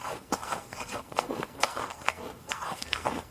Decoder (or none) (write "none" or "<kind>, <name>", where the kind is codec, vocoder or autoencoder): codec, SNAC